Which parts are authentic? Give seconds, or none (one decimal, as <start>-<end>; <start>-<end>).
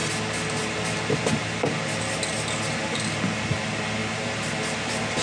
0.0-5.2